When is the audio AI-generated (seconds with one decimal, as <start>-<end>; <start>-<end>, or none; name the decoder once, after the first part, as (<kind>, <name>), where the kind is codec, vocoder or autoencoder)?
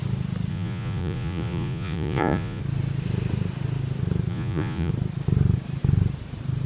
0.5-2.6 (vocoder, Vocos); 4.3-4.9